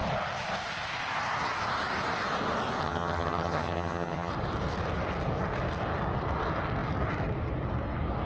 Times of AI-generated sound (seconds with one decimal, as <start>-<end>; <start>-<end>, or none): 2.8-4.3